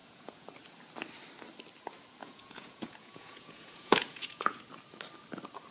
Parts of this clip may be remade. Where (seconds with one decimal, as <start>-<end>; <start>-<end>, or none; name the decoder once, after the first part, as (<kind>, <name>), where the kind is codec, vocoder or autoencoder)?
0.0-0.5 (vocoder, Vocos); 2.2-4.6